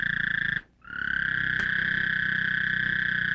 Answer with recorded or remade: recorded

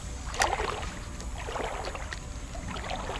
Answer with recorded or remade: recorded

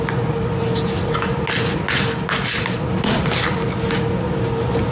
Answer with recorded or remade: recorded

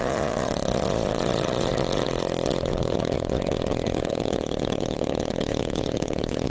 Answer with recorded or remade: remade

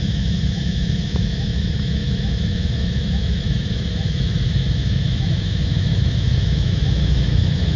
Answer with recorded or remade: remade